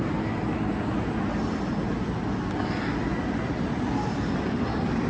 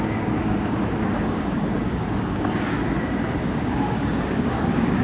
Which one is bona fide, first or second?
first